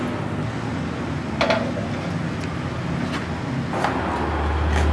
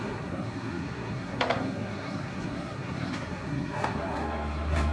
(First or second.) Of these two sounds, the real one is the first